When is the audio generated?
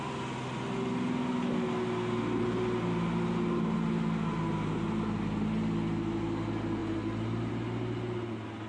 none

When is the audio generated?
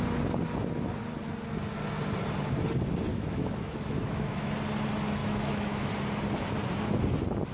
3.1-4.5 (autoencoder, DAC-VAE); 5.2-5.9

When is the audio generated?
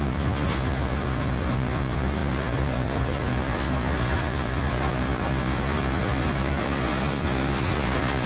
0.0-8.3 (vocoder, Vocos)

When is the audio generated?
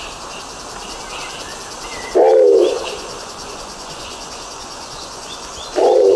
2.6-6.2 (vocoder, Vocos)